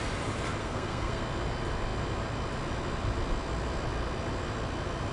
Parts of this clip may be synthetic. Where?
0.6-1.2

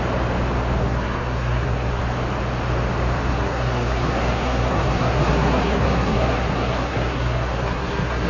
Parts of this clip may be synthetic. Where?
0.8-2.0; 3.3-8.3

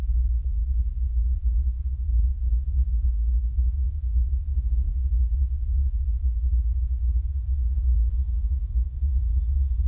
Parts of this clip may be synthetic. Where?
0.6-3.9; 4.5-5.2; 7.6-9.2

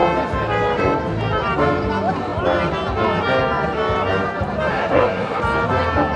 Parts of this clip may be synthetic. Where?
4.7-5.4

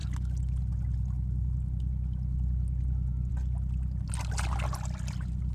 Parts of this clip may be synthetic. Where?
none

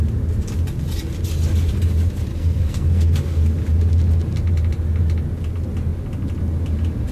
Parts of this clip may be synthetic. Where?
2.3-3.4